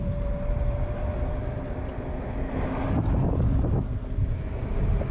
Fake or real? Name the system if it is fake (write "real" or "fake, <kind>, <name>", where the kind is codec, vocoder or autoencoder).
real